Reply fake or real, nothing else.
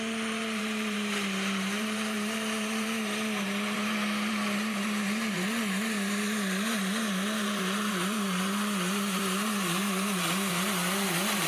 fake